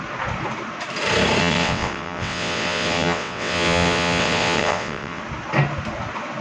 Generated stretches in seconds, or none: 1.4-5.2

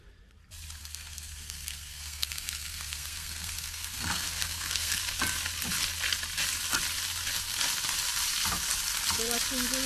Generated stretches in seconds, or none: 0.8-5.0

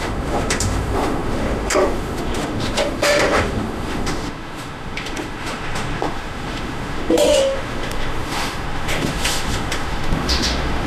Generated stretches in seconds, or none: 0.0-10.9